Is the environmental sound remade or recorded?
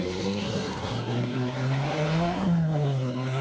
remade